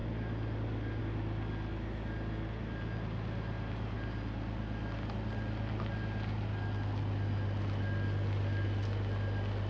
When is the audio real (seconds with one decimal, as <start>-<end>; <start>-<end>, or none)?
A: 0.0-9.7